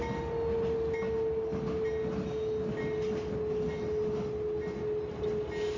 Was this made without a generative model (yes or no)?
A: yes